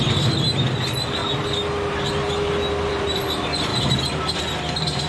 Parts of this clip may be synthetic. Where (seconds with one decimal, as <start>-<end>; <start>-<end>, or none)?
none